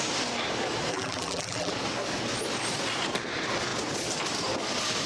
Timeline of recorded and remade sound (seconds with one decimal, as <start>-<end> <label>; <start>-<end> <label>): 0.0-0.9 recorded; 0.9-1.7 remade; 1.7-5.1 recorded